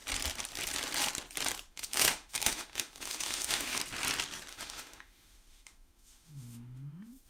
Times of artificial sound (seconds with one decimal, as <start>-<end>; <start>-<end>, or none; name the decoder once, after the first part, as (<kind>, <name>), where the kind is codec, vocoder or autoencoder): 1.7-3.8 (autoencoder, DAC-VAE); 4.5-7.3

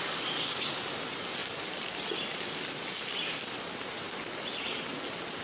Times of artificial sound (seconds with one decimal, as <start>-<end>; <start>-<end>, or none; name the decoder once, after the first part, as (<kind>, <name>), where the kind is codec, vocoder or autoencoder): none

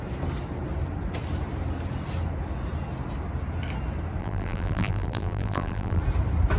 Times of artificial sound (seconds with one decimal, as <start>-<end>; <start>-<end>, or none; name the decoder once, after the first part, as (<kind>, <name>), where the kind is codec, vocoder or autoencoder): 4.2-6.0 (vocoder, BigVGAN v2)

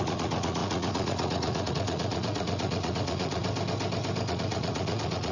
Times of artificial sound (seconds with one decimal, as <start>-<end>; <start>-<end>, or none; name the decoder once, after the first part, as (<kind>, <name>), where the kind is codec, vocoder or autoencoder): 0.0-3.4 (vocoder, Vocos); 4.3-5.3

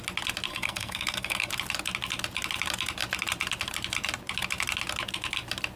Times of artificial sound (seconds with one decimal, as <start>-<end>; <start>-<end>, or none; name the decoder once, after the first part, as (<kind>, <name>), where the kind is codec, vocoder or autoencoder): 0.5-1.5 (codec, SNAC)

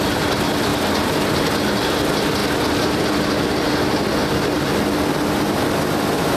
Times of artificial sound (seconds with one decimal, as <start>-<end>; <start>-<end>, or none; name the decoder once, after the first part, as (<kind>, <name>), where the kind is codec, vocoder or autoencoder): none